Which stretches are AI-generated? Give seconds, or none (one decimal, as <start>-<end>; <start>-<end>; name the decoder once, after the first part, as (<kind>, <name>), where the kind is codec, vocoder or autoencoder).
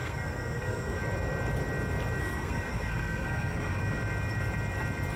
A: 0.0-1.0 (codec, SNAC); 2.2-3.8